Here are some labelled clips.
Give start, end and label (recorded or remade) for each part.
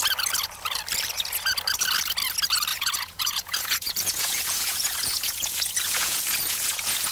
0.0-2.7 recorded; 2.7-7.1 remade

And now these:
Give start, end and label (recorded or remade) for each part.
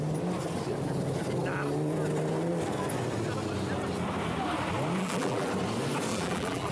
0.0-5.0 recorded; 5.0-5.5 remade; 5.5-6.1 recorded; 6.1-6.7 remade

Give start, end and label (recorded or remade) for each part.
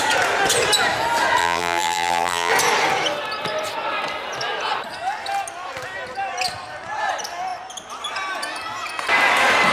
0.0-1.4 recorded; 1.4-2.5 remade; 2.5-9.7 recorded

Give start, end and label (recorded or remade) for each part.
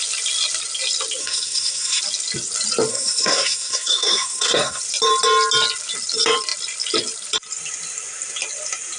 0.0-1.2 recorded; 1.2-2.0 remade; 2.0-2.9 recorded; 2.9-4.8 remade; 4.8-9.0 recorded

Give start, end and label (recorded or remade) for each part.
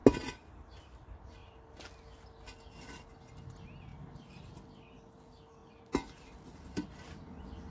0.0-1.4 recorded; 1.4-1.9 remade; 1.9-3.9 recorded; 3.9-4.7 remade; 4.7-5.6 recorded; 5.6-7.1 remade; 7.1-7.7 recorded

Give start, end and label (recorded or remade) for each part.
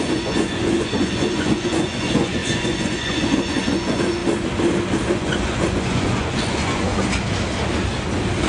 0.0-4.2 remade; 4.2-5.1 recorded; 5.1-6.9 remade; 6.9-8.5 recorded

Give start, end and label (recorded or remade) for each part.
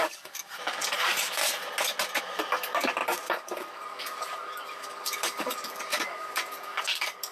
0.0-1.4 remade; 1.4-2.2 recorded; 2.2-7.3 remade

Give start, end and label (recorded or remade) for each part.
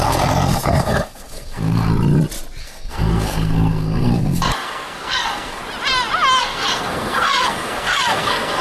0.0-1.9 remade; 1.9-2.6 recorded; 2.6-5.6 remade; 5.6-6.4 recorded; 6.4-8.6 remade